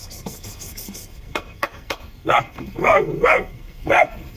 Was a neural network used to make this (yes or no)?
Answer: yes